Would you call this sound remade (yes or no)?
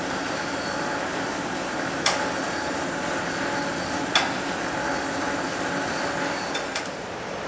no